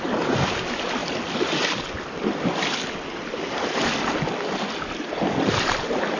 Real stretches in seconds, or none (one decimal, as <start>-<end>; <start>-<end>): 0.0-6.2